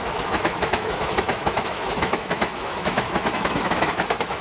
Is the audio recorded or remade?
remade